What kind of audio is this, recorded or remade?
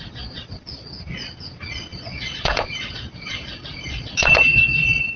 remade